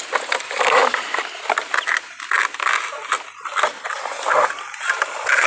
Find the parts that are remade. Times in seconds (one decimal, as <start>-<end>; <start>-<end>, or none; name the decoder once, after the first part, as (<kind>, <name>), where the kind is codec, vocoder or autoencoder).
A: none